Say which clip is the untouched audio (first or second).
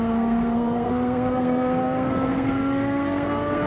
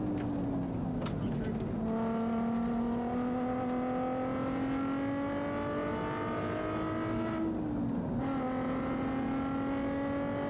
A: second